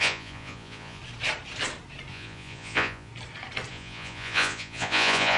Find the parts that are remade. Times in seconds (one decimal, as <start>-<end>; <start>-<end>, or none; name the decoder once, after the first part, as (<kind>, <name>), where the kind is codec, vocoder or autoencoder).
0.0-1.0 (vocoder, Vocos); 2.1-3.1; 3.7-5.4

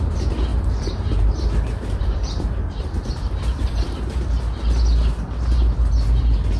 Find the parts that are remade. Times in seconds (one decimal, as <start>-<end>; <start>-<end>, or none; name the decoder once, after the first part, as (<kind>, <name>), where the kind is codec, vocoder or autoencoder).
0.5-4.2 (vocoder, BigVGAN v2)

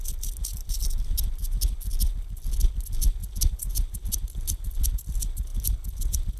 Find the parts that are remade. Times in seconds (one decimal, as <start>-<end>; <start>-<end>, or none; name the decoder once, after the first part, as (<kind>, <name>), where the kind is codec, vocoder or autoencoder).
none

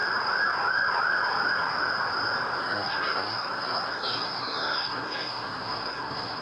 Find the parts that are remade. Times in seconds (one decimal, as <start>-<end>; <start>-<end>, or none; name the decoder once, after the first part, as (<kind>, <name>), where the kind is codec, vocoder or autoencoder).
2.6-6.4 (codec, SNAC)

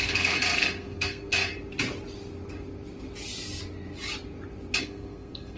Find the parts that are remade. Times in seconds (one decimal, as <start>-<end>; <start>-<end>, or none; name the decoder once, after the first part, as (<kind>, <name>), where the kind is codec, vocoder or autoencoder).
0.0-1.4 (codec, SNAC); 4.8-5.6

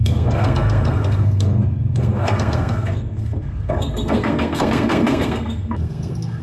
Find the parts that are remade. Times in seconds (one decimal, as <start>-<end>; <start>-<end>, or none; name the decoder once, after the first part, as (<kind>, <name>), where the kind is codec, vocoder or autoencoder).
0.0-6.4 (codec, SNAC)